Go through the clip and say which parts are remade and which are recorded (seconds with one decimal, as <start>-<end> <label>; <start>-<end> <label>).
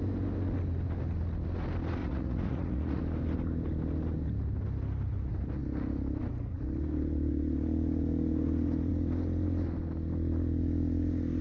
0.0-2.0 recorded; 2.0-3.0 remade; 3.0-11.4 recorded